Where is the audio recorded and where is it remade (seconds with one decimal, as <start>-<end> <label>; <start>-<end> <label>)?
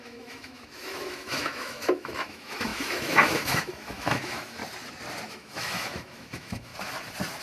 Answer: 0.0-4.6 remade; 4.6-5.3 recorded; 5.3-6.7 remade; 6.7-7.4 recorded